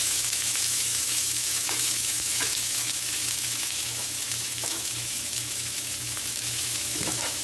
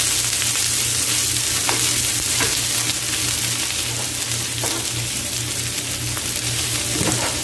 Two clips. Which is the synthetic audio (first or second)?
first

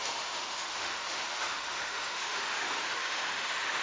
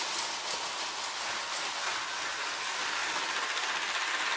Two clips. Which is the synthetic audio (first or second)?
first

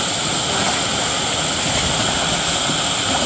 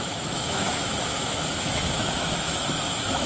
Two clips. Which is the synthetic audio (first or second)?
second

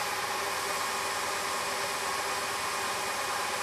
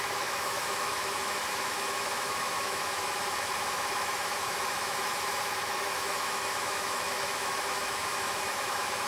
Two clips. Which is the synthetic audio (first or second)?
second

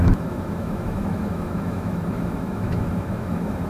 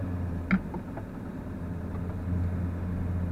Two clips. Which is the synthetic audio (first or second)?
first